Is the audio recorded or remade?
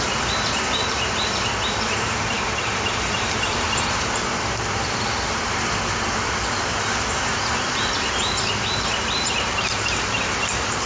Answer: remade